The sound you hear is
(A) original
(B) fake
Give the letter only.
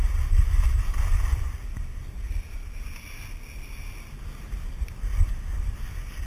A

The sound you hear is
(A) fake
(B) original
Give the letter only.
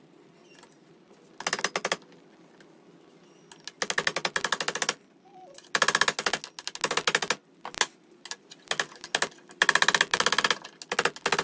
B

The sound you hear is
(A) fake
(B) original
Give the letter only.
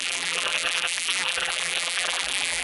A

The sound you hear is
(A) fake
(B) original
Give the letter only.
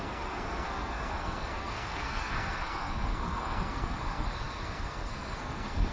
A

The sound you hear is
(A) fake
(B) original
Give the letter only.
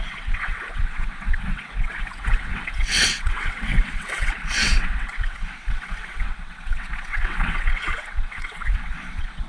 A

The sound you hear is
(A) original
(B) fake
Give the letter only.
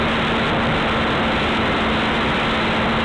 A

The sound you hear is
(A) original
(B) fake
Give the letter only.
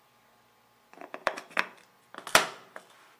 A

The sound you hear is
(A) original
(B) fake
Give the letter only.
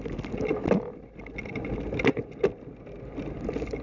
A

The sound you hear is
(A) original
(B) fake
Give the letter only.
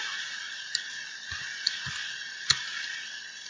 A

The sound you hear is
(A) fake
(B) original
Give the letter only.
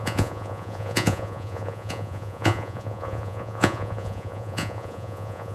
A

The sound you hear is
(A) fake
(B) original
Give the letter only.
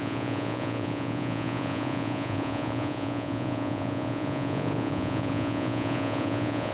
A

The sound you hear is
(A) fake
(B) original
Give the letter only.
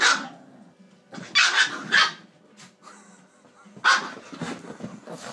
B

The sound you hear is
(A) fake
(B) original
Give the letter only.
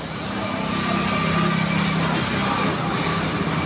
B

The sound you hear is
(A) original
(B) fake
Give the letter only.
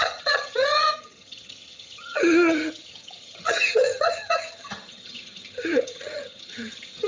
B